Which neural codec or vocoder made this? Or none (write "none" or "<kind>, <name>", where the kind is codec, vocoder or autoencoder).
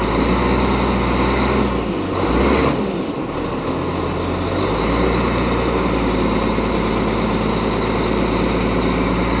none